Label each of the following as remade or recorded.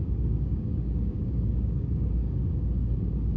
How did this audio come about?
remade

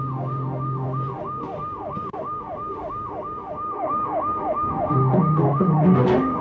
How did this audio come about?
remade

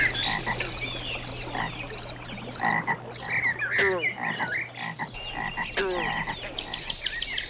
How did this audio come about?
recorded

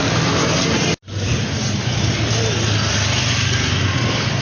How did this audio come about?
recorded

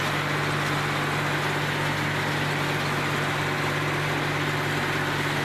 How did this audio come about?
recorded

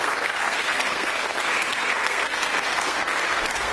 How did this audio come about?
remade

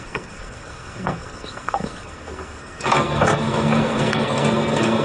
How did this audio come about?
remade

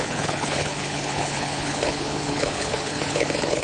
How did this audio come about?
remade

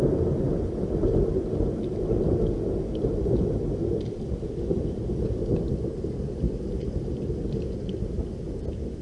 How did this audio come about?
recorded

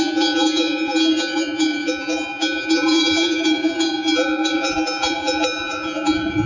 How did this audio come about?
remade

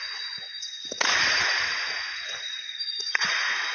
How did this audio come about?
remade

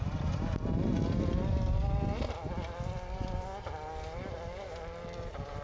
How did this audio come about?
recorded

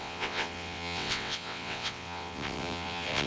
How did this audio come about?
remade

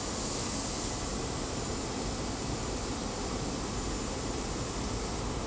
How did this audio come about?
recorded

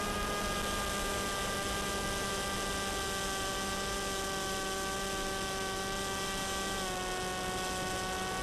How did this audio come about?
recorded